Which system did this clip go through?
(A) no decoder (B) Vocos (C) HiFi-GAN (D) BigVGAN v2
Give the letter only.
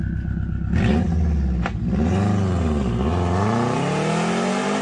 A